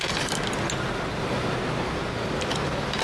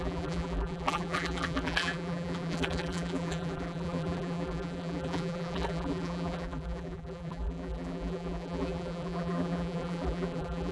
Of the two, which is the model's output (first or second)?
second